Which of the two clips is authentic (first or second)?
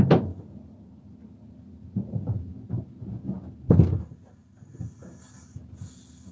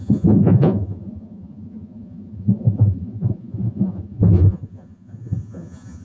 first